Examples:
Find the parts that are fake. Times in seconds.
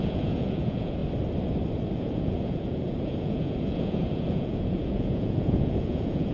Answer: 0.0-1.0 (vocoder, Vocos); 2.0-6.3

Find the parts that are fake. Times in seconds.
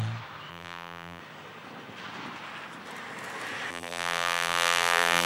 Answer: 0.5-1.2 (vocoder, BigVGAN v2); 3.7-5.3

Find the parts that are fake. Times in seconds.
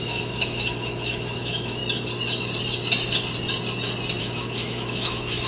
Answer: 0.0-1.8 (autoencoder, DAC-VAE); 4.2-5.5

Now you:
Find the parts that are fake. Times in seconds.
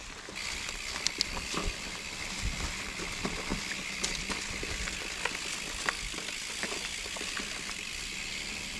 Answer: none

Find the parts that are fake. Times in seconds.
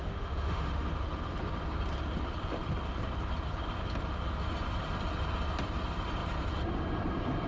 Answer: 0.0-0.9 (autoencoder, DAC-VAE)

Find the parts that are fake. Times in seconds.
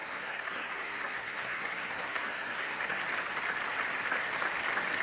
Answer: 0.0-3.0 (codec, SNAC)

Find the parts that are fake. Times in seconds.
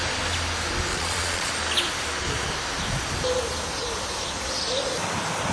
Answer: 0.9-1.5 (vocoder, Vocos)